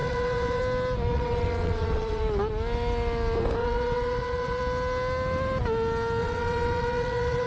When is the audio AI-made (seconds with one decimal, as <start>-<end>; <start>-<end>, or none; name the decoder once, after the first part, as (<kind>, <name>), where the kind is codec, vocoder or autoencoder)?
0.0-0.6 (vocoder, WaveNeXt); 1.1-2.2; 3.6-4.6; 6.2-7.5